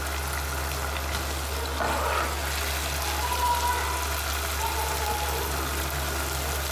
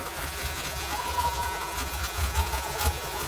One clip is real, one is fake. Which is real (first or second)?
first